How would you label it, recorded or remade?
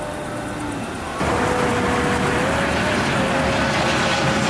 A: recorded